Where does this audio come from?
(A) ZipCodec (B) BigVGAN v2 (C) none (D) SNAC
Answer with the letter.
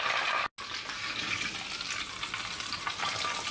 C